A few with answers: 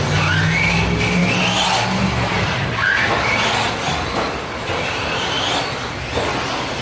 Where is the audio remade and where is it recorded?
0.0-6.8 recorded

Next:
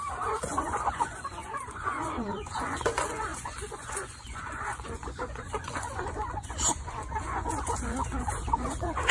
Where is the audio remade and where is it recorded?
0.0-9.1 remade